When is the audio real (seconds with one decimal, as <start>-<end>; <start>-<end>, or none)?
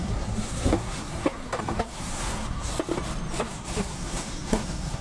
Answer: 2.7-3.4